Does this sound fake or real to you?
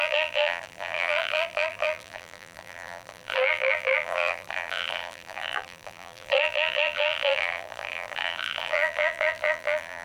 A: fake